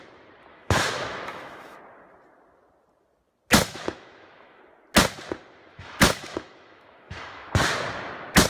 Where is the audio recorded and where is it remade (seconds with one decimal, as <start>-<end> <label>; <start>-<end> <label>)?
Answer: 0.0-0.5 recorded; 0.5-1.8 remade; 1.8-3.5 recorded; 3.5-4.6 remade; 4.6-5.7 recorded; 5.7-7.5 remade; 7.5-8.5 recorded